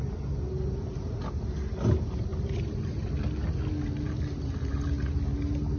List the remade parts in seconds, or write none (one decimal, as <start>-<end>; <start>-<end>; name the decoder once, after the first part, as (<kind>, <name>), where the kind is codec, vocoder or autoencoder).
2.3-3.1 (vocoder, BigVGAN v2)